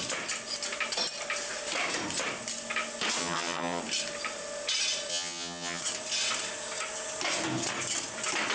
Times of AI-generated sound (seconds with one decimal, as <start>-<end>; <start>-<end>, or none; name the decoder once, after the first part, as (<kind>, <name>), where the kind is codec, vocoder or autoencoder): 3.2-3.8 (vocoder, HiFi-GAN); 5.1-5.8